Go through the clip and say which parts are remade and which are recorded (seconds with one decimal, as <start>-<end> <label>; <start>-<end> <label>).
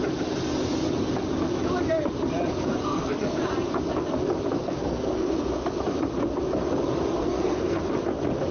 0.0-2.8 recorded; 2.8-3.4 remade; 3.4-4.6 recorded; 4.6-5.3 remade; 5.3-7.2 recorded; 7.2-7.8 remade; 7.8-8.5 recorded